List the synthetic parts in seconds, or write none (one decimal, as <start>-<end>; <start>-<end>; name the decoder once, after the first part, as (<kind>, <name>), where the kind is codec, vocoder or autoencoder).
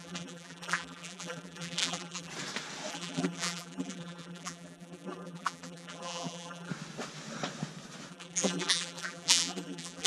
0.0-2.3 (vocoder, BigVGAN v2); 2.9-6.7; 8.1-10.1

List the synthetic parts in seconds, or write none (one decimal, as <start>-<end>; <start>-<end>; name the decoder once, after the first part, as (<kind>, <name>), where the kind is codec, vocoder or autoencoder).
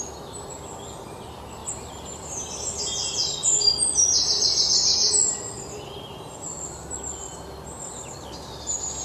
none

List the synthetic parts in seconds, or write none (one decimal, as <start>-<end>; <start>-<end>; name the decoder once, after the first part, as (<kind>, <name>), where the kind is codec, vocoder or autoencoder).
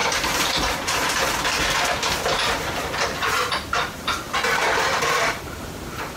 0.0-1.8 (vocoder, BigVGAN v2)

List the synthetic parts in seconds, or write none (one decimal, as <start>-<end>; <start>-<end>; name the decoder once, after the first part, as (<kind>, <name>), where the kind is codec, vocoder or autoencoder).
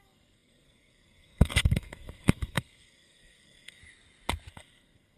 0.0-3.8 (codec, SNAC); 4.5-5.2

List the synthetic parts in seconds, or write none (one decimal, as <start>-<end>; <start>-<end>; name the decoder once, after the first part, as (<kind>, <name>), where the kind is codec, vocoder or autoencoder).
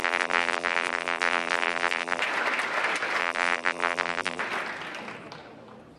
0.0-2.2 (vocoder, BigVGAN v2); 3.2-4.4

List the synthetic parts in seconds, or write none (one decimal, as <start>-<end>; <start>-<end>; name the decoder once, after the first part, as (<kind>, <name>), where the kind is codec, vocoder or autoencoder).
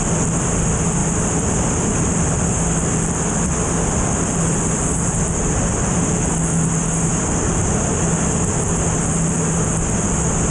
1.0-6.0 (vocoder, BigVGAN v2)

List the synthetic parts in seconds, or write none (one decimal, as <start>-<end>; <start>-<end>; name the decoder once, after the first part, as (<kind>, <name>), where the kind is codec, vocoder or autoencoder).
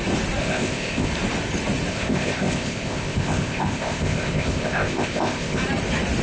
0.4-1.1 (codec, ZipCodec); 1.9-5.6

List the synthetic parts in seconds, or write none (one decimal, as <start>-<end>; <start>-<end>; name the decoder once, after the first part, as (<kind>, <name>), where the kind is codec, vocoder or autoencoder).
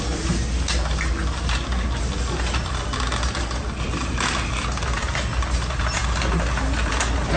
none